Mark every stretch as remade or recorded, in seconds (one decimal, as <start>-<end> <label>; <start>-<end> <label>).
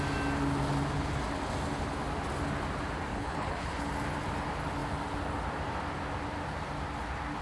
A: 0.0-3.1 recorded; 3.1-3.9 remade; 3.9-7.4 recorded